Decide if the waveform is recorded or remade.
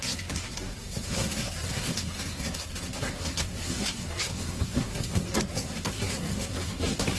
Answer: remade